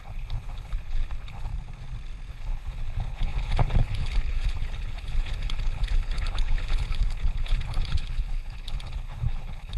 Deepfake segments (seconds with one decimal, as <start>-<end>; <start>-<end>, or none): 0.0-1.5; 2.3-9.8